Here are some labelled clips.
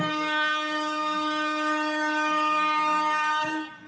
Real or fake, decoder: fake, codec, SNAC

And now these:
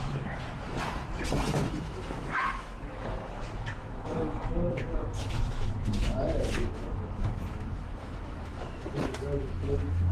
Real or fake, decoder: fake, autoencoder, DAC-VAE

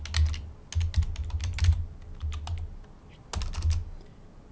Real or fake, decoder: real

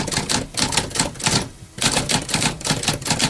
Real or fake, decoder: real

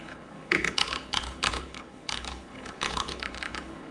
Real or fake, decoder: fake, codec, HILCodec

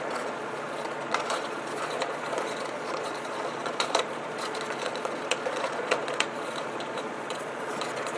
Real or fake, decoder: fake, vocoder, Vocos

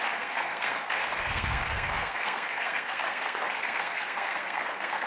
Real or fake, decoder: fake, codec, SNAC